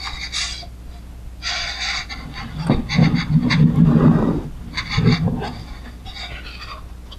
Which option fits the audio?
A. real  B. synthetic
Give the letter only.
A